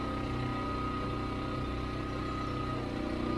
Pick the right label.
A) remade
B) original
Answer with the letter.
B